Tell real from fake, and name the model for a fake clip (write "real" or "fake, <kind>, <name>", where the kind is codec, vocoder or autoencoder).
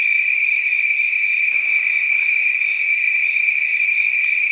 fake, vocoder, BigVGAN v2